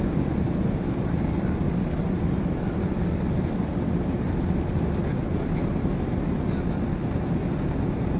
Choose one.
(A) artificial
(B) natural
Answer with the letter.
B